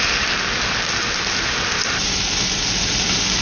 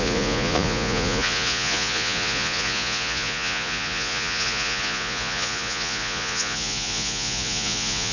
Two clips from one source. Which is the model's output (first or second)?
second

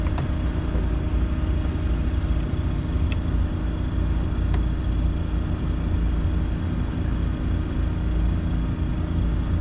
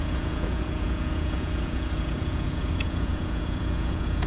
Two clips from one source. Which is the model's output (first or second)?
second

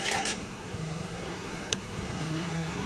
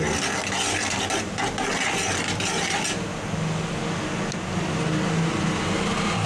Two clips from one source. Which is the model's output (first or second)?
first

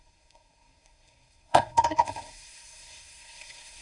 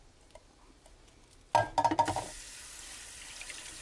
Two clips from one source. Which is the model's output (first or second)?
first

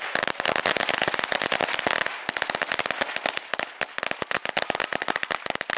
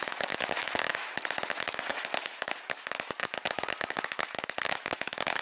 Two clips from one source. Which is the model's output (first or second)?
second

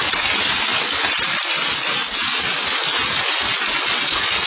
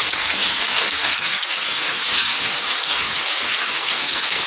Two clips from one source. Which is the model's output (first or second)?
second